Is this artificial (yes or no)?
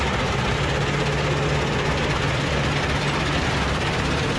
no